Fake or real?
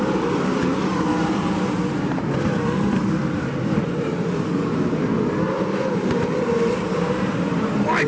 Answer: fake